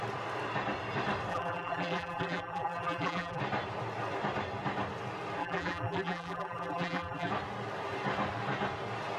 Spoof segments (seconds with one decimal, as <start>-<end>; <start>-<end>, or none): 1.3-3.4; 5.4-7.3